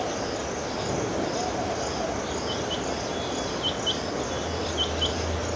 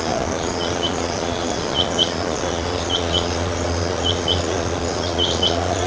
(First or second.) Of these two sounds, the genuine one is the first